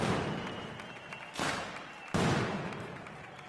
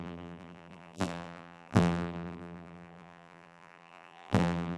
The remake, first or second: second